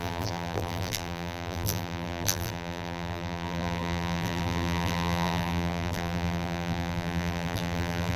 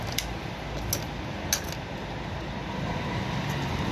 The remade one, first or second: first